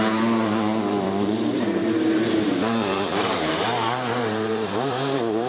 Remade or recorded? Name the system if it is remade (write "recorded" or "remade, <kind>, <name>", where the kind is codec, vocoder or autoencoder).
remade, vocoder, BigVGAN v2